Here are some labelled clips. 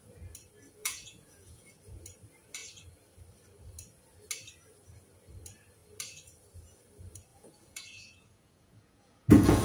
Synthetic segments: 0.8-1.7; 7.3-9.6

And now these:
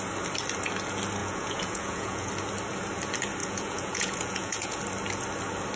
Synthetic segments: 1.2-2.3; 3.4-4.8

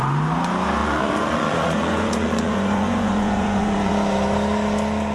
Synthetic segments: 0.8-3.9

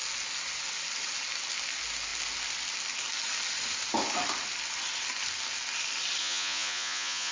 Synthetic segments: 6.2-7.3

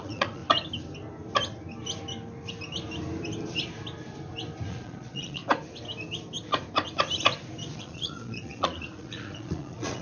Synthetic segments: 0.0-0.4; 4.7-5.4; 7.7-10.0

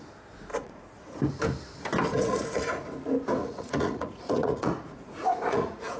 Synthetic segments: 0.5-1.2; 2.1-2.8; 3.4-6.0